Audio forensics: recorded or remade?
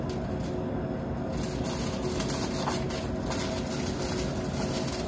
recorded